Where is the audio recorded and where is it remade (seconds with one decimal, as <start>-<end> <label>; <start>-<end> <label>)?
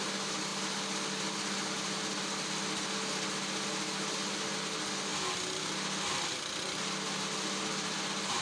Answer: 0.0-8.4 recorded